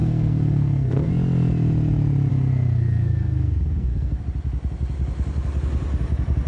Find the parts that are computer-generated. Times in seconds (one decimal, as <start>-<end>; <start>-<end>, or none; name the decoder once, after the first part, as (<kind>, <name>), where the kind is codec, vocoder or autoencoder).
0.0-1.1 (codec, SNAC); 2.3-4.2